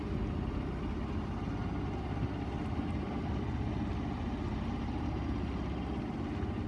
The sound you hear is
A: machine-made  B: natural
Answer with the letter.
B